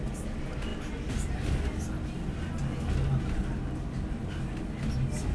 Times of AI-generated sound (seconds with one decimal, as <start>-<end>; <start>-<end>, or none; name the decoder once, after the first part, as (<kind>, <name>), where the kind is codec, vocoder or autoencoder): none